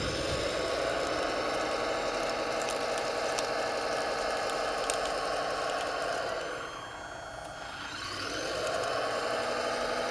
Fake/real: real